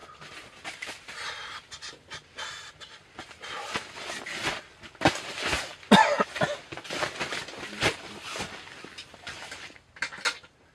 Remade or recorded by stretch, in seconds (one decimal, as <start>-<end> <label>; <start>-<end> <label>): 0.0-10.7 recorded